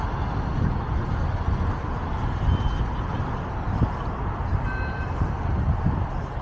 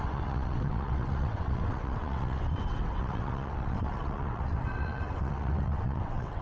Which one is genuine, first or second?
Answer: first